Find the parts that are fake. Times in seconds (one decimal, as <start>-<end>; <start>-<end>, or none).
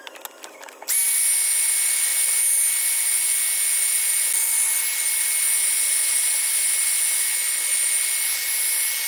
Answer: none